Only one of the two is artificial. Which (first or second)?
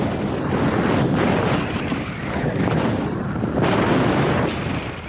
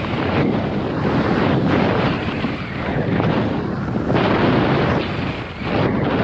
first